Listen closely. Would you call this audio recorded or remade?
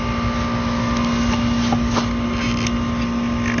recorded